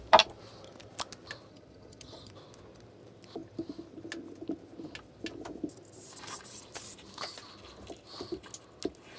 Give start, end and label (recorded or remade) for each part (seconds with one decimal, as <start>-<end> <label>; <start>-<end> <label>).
0.0-1.5 recorded; 1.5-2.3 remade; 2.3-9.2 recorded